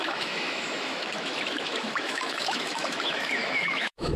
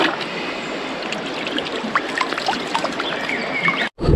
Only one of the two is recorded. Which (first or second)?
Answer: second